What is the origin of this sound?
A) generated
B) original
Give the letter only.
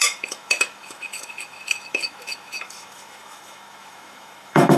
A